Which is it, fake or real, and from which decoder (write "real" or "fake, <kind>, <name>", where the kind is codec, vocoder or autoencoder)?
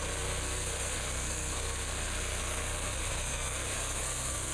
fake, codec, SNAC